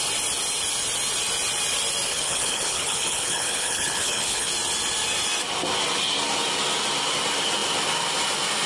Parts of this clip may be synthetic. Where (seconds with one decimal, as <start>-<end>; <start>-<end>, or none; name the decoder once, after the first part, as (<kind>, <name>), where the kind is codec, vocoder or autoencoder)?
2.1-4.5 (codec, HILCodec)